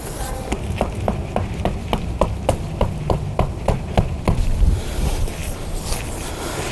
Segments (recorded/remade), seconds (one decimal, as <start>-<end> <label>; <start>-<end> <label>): 0.0-6.7 recorded